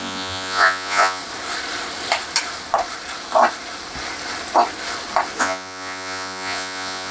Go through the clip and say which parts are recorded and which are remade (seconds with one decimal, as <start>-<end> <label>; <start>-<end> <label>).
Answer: 0.0-1.2 remade; 1.2-5.4 recorded; 5.4-7.1 remade